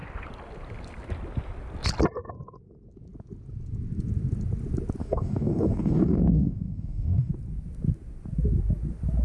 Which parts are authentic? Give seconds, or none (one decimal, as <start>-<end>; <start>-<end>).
0.0-5.0; 7.3-9.2